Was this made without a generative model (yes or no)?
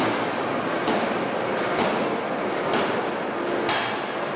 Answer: yes